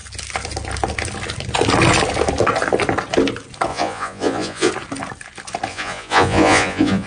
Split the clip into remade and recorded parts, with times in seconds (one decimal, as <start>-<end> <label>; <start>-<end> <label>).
0.0-3.7 recorded; 3.7-4.7 remade; 4.7-5.7 recorded; 5.7-7.1 remade